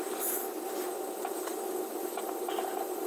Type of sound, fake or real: fake